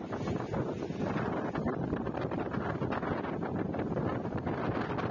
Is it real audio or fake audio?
real